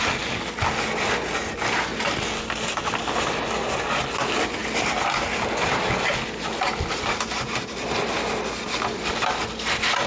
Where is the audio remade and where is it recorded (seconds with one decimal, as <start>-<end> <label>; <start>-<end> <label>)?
0.0-10.1 recorded